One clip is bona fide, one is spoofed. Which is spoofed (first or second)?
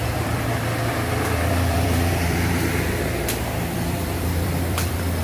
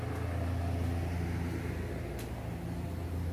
first